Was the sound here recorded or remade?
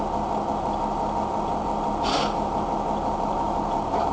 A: recorded